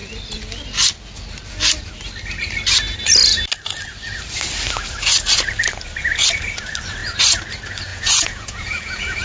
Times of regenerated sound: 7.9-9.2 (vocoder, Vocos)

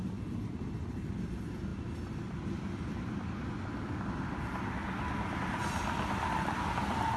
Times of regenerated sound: none

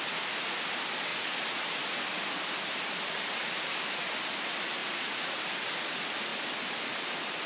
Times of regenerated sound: 1.1-1.6 (vocoder, Vocos); 4.8-5.4

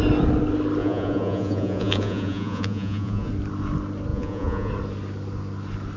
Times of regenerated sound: 0.8-3.3 (vocoder, Vocos); 4.1-4.7